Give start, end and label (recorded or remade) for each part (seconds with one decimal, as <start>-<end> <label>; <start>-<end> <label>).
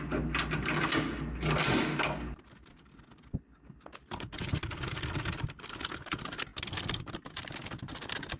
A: 0.0-8.4 recorded